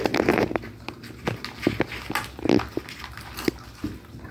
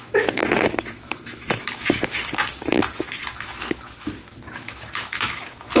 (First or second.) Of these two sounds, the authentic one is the first